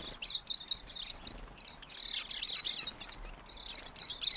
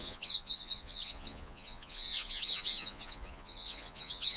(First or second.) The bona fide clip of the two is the first